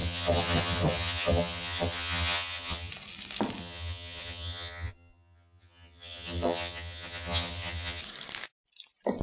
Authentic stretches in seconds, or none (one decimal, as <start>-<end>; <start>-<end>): 2.9-3.6; 8.0-9.2